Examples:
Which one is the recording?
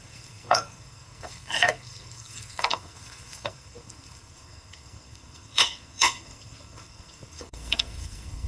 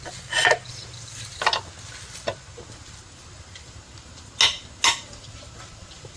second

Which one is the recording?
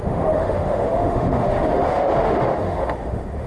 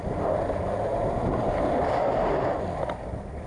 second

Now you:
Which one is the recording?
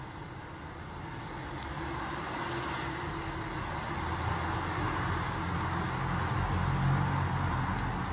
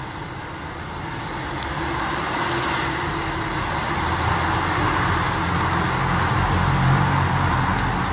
first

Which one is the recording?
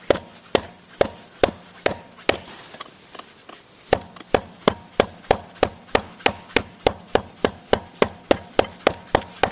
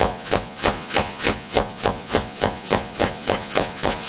first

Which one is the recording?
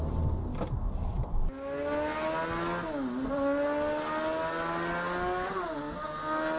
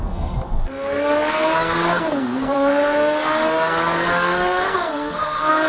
first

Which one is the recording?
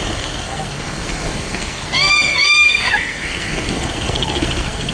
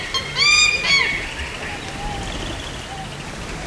second